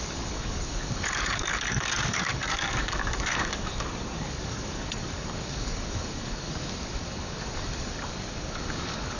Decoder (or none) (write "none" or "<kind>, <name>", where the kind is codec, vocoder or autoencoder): codec, DAC